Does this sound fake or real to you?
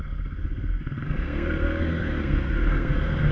fake